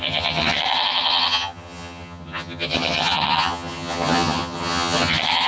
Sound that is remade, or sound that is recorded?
remade